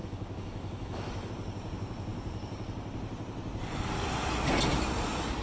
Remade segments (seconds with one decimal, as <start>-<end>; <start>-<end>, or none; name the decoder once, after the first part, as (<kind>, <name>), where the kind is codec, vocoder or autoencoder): 0.0-1.3 (autoencoder, DAC-VAE)